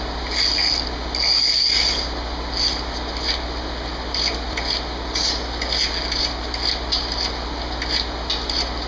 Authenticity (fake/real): real